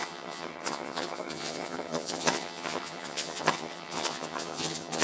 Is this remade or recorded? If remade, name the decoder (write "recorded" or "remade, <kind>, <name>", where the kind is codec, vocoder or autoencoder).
remade, vocoder, HiFi-GAN